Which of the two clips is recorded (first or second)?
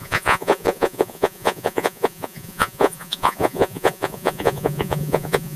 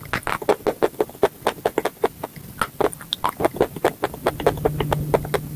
second